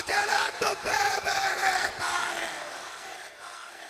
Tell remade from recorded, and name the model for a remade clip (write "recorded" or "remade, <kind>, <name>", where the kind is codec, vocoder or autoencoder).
remade, codec, SNAC